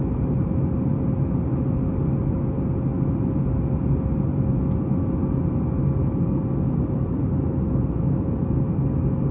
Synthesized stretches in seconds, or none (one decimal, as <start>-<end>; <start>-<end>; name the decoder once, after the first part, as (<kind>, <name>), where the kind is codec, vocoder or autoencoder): none